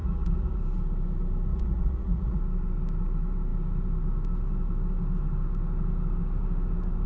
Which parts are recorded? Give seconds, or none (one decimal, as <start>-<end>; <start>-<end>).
0.6-1.5; 2.4-7.1